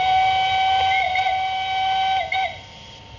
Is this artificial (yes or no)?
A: no